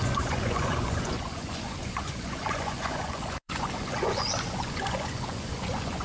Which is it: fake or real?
fake